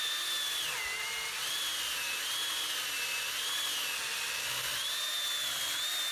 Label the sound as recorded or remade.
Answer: recorded